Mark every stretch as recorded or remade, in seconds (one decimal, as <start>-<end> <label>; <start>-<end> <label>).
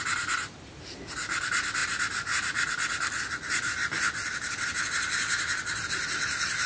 0.0-6.7 recorded